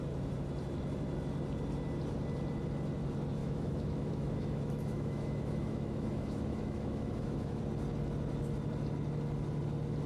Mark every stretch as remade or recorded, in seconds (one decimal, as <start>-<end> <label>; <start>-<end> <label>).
0.0-3.4 recorded; 3.4-7.6 remade; 7.6-10.1 recorded